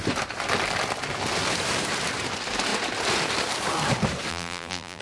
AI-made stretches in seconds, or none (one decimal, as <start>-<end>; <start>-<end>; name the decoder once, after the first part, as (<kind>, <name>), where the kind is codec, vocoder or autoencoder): 4.3-5.0 (vocoder, BigVGAN v2)